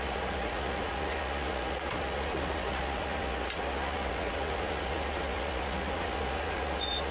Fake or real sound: fake